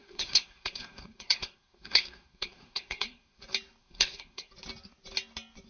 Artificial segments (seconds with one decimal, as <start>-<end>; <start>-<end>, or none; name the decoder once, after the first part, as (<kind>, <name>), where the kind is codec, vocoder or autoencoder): 0.0-3.4 (codec, SNAC); 3.8-4.5